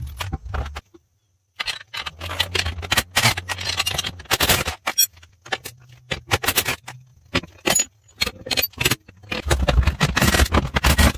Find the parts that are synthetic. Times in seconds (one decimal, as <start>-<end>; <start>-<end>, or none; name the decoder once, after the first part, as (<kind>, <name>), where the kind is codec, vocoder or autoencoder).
1.2-2.1 (vocoder, BigVGAN v2); 3.3-4.2